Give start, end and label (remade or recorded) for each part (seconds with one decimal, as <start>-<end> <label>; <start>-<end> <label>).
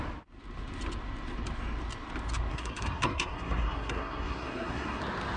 0.0-2.5 recorded; 2.5-5.0 remade; 5.0-5.4 recorded